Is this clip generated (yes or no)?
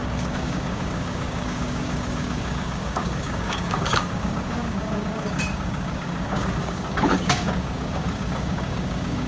yes